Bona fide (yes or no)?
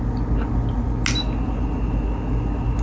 yes